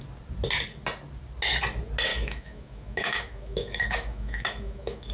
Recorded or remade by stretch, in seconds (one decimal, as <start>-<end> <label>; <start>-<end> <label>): 0.0-2.1 recorded; 2.1-5.1 remade